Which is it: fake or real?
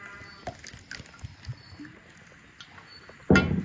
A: real